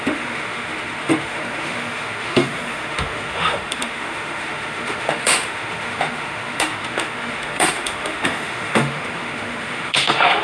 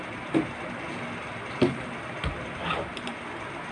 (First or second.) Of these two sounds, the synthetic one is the first